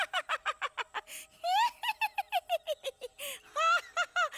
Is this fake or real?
real